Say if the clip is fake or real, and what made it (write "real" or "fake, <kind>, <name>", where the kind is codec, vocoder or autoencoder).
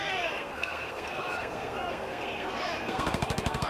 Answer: fake, codec, SNAC